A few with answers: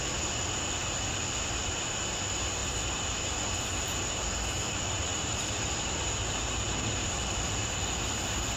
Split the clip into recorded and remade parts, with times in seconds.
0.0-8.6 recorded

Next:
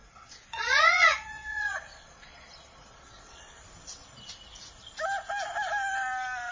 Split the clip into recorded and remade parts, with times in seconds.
0.0-3.4 remade; 3.4-6.5 recorded

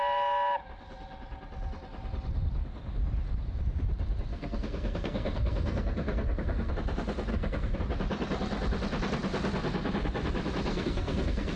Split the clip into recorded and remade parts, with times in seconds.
0.0-4.3 recorded; 4.3-6.7 remade; 6.7-7.3 recorded; 7.3-7.8 remade; 7.8-10.7 recorded; 10.7-11.6 remade